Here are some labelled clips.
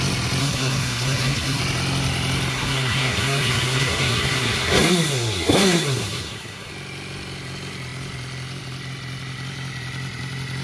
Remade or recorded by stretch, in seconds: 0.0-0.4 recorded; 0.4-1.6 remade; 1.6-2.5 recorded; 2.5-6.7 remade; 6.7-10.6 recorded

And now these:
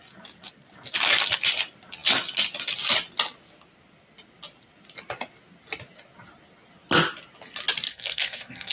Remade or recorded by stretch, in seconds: 0.0-7.9 recorded; 7.9-8.7 remade

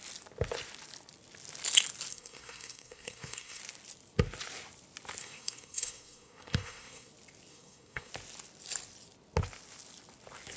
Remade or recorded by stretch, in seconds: 0.0-2.1 recorded; 2.1-3.6 remade; 3.6-5.2 recorded; 5.2-7.1 remade; 7.1-7.5 recorded; 7.5-8.1 remade; 8.1-10.6 recorded

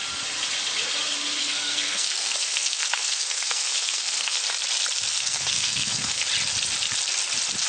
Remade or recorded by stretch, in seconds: 0.0-1.4 recorded; 1.4-4.4 remade; 4.4-5.1 recorded; 5.1-6.2 remade; 6.2-7.7 recorded

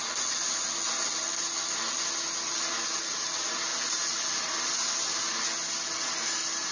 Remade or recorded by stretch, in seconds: 0.0-6.7 recorded